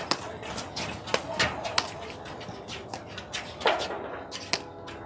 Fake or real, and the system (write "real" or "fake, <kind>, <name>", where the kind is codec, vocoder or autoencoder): real